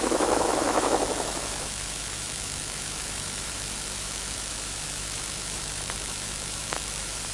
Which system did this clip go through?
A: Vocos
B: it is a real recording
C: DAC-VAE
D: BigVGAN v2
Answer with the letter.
C